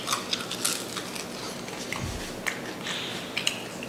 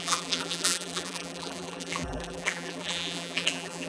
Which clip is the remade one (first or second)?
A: second